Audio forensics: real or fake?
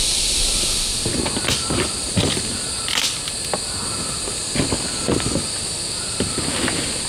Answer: real